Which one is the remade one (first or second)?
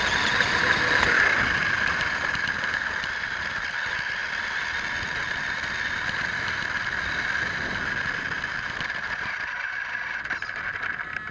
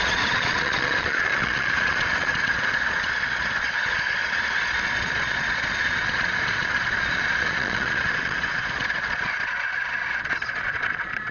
second